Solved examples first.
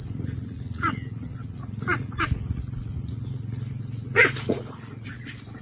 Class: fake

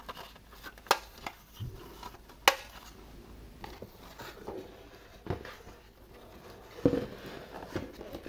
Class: real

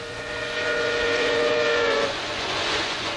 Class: fake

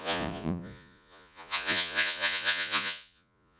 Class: fake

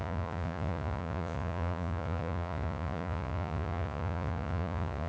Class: fake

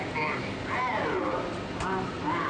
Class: real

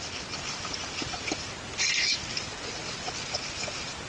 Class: real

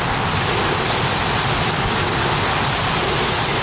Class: real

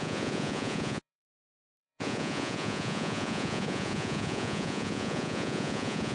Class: fake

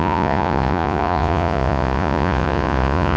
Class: fake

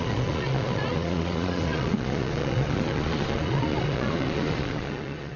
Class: fake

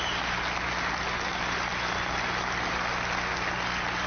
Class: real